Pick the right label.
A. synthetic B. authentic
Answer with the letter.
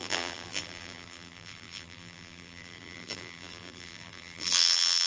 A